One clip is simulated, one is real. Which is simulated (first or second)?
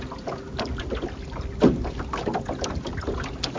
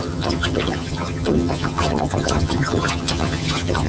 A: second